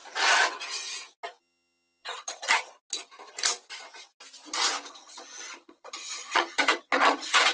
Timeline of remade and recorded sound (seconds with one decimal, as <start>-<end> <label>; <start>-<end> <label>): 0.0-1.4 recorded; 1.4-2.7 remade; 2.7-4.9 recorded; 4.9-7.5 remade